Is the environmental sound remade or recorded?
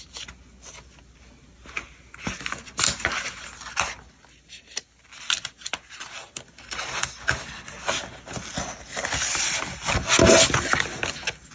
recorded